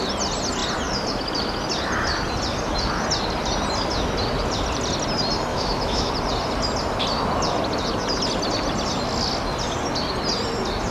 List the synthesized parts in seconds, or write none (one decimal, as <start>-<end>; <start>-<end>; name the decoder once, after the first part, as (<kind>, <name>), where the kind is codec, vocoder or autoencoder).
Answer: 5.5-6.1 (autoencoder, DAC-VAE)